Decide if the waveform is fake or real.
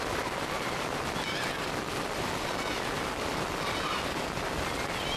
real